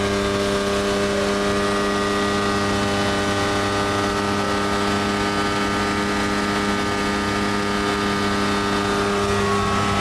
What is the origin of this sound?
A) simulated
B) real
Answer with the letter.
B